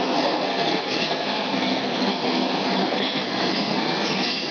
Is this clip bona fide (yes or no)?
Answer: no